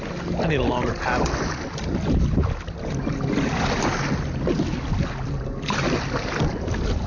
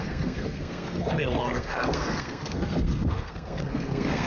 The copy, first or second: second